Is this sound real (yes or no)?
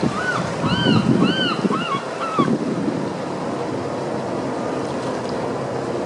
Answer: yes